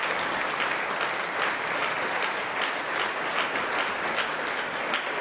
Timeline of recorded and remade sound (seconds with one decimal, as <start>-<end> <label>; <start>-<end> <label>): 0.0-1.8 recorded; 1.8-3.3 remade; 3.3-5.2 recorded